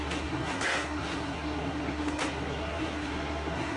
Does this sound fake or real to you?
fake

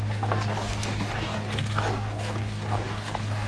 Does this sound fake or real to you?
fake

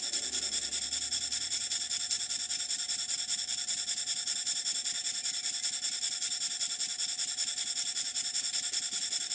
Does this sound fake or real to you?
real